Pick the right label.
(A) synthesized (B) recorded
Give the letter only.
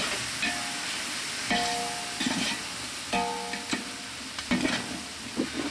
B